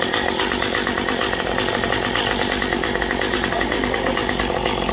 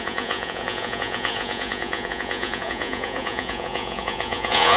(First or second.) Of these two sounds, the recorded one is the first